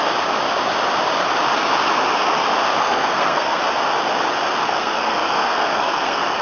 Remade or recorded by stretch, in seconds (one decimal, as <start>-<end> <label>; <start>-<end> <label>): 0.0-2.8 recorded; 2.8-3.6 remade; 3.6-4.6 recorded; 4.6-6.4 remade